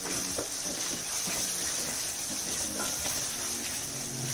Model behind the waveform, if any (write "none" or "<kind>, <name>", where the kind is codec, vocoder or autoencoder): none